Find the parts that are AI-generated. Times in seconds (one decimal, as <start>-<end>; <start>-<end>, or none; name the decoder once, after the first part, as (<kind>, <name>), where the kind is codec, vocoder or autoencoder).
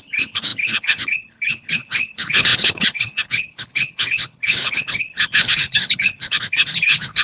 0.0-7.2 (codec, HILCodec)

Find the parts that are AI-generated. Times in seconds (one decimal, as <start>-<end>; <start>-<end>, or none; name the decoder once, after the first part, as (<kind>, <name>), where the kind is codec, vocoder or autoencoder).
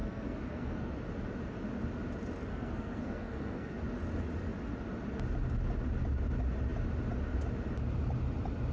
0.0-0.9 (codec, SNAC); 2.5-3.8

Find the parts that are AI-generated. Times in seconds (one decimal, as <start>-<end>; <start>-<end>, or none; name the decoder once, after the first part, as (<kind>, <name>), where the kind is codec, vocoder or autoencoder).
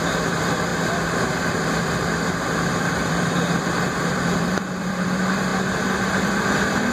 0.0-0.7 (vocoder, BigVGAN v2); 2.8-5.5; 6.0-6.9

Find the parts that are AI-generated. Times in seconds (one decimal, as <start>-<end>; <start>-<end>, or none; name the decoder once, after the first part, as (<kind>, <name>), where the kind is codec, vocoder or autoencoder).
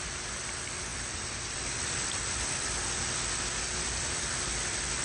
none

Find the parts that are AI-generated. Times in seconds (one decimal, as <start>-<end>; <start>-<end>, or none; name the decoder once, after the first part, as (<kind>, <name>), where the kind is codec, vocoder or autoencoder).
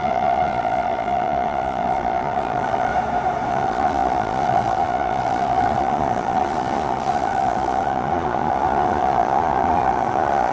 0.0-2.9 (vocoder, Vocos); 3.5-10.5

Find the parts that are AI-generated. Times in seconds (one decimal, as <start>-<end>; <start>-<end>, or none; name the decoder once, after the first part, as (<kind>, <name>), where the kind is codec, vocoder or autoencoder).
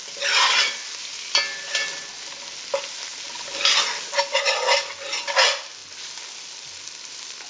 none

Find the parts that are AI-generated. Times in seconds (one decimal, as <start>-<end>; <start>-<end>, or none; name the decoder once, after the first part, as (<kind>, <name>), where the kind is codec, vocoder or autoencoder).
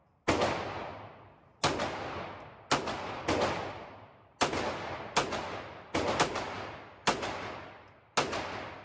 none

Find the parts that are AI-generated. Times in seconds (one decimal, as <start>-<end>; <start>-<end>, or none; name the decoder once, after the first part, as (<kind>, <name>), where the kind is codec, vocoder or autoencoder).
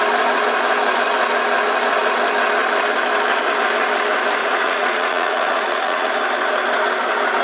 4.4-6.1 (vocoder, Vocos)